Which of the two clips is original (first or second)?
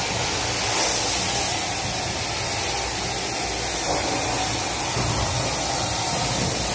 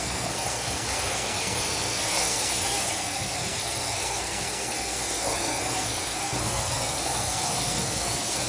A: first